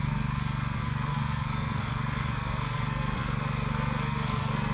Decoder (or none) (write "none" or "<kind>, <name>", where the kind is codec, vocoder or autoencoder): codec, SNAC